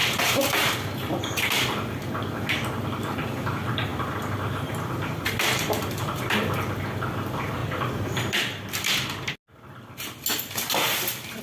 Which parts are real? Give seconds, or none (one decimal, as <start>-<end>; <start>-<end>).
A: 0.0-11.4